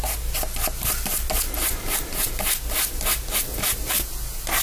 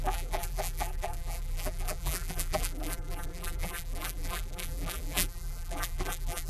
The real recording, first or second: first